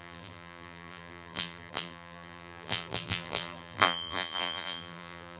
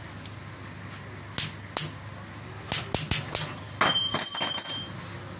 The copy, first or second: first